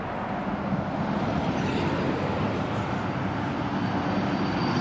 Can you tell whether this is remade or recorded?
recorded